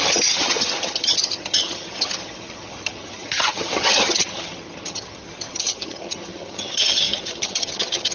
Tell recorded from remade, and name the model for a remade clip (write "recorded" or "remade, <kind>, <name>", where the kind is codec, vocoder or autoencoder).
remade, vocoder, HiFi-GAN